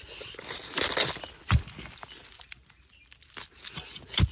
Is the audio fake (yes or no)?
no